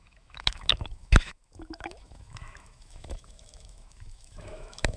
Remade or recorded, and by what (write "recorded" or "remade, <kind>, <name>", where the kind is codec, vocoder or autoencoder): remade, autoencoder, DAC-VAE